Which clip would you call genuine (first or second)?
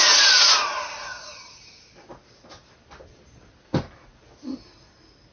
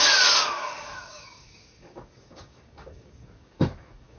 first